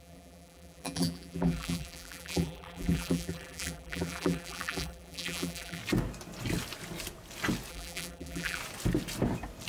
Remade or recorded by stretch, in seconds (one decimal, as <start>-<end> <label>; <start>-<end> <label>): 0.0-5.8 remade; 5.8-7.7 recorded; 7.7-8.6 remade; 8.6-9.7 recorded